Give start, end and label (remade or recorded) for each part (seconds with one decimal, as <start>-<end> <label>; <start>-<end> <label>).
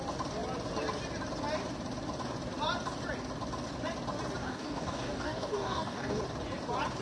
0.0-4.4 recorded; 4.4-6.2 remade; 6.2-7.0 recorded